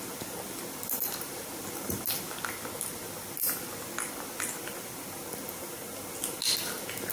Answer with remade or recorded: recorded